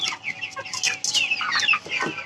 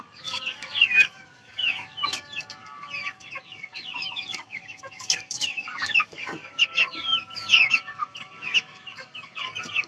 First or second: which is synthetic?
second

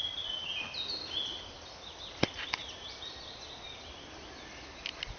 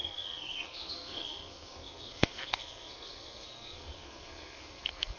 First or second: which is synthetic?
second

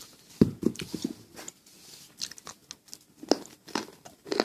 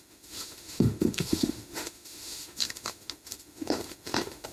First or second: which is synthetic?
second